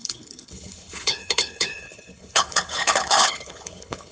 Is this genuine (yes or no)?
no